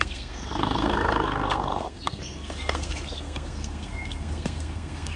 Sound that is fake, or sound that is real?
fake